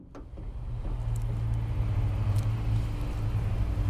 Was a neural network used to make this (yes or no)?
no